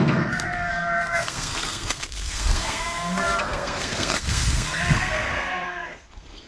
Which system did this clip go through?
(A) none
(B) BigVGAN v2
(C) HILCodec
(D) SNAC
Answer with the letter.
D